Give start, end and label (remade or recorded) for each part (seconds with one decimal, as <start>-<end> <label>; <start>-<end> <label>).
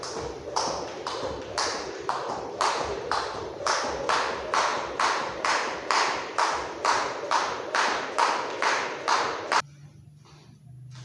0.0-0.9 recorded; 0.9-3.8 remade; 3.8-11.0 recorded